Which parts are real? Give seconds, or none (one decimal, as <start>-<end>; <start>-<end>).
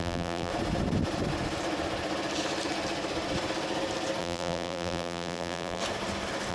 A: 0.5-4.2; 5.8-6.5